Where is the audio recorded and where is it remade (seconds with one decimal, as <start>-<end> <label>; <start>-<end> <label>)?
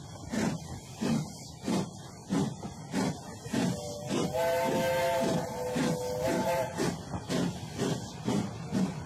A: 0.0-9.1 recorded